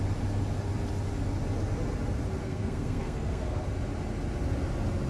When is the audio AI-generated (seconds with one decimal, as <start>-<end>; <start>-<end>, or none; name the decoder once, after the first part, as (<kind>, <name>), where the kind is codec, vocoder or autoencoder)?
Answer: 2.4-3.6 (codec, SNAC)